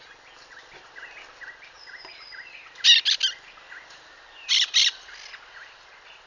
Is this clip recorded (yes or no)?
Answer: yes